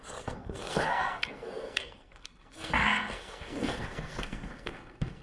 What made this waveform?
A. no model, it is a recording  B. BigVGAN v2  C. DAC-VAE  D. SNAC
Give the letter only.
D